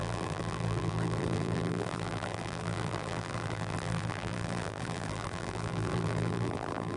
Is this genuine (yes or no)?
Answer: no